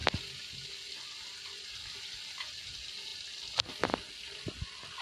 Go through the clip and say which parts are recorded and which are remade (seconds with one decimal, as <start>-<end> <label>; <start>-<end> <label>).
0.0-5.0 recorded